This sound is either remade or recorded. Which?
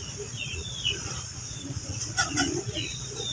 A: remade